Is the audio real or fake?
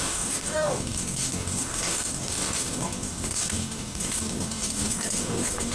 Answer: fake